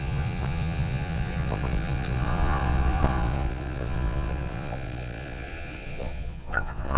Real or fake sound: fake